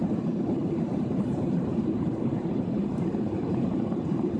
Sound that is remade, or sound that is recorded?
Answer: remade